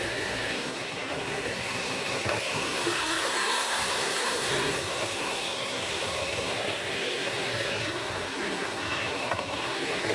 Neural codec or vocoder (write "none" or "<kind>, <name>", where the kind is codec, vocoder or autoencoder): codec, SNAC